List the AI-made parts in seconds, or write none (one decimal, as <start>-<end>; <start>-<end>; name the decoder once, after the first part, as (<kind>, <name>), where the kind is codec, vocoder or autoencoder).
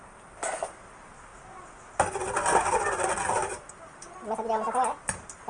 none